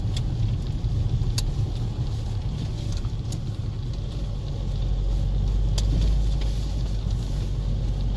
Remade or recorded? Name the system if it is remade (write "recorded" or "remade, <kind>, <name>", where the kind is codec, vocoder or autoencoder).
recorded